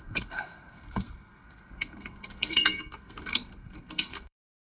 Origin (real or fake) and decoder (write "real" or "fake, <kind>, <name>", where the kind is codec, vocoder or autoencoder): fake, codec, SNAC